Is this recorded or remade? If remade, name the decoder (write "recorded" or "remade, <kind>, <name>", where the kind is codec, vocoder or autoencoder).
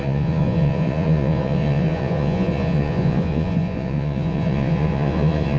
remade, vocoder, Vocos